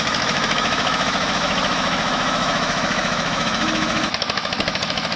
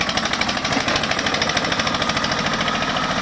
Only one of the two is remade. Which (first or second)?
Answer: first